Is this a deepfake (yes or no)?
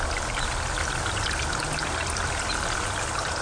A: no